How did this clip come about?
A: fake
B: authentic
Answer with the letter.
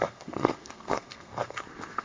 A